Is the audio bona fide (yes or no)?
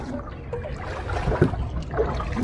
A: yes